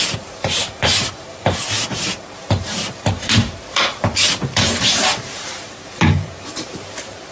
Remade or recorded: remade